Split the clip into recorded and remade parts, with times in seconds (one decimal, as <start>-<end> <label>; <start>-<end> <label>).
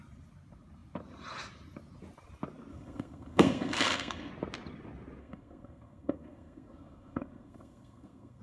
0.0-2.7 recorded; 2.7-4.3 remade; 4.3-5.2 recorded; 5.2-8.4 remade